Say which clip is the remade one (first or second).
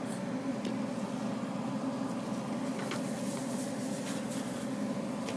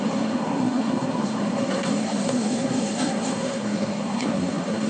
second